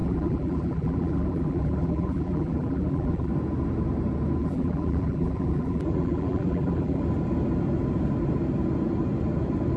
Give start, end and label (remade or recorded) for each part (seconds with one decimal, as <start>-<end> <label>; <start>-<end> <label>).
0.0-3.3 remade; 3.3-4.4 recorded; 4.4-7.0 remade; 7.0-9.8 recorded